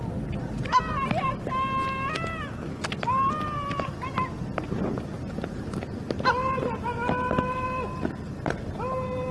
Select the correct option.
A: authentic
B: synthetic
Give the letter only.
A